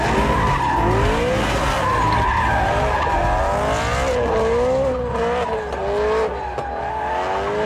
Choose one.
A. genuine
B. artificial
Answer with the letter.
A